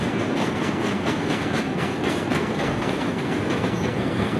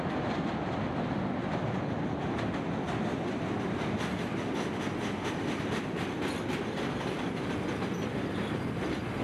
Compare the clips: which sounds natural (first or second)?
second